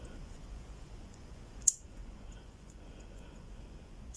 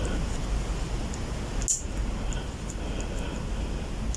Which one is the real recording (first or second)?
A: second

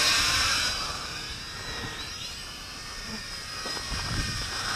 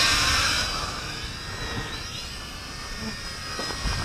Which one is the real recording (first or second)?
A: second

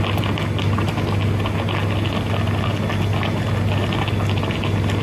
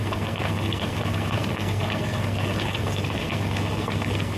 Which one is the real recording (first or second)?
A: first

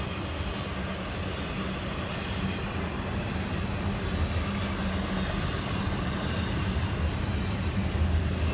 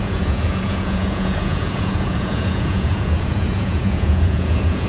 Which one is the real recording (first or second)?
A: first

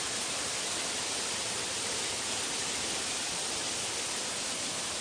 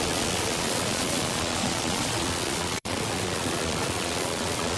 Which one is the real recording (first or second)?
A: first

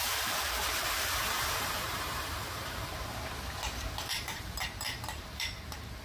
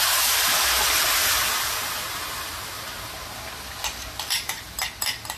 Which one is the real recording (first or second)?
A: second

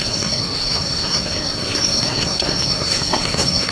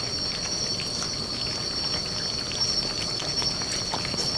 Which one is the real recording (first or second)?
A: second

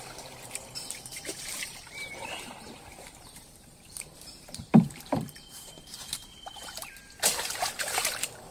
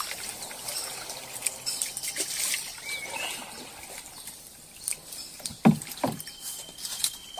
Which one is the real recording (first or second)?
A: second